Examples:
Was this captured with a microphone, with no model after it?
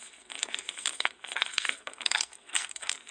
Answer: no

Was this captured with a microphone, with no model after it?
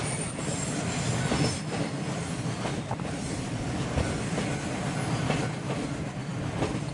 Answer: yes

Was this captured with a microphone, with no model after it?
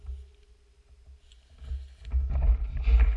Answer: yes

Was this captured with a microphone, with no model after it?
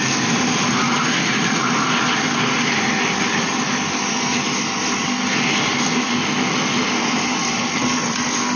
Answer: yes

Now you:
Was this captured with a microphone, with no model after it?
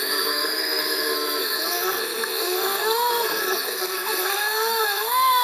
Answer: no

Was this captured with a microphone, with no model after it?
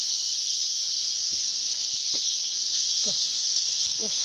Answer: no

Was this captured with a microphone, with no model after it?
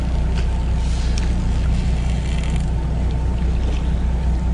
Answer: yes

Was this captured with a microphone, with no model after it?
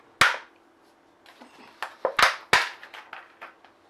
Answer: yes